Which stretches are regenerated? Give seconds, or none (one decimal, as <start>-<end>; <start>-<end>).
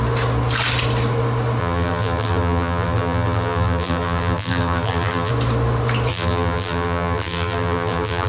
1.6-5.3; 6.1-8.3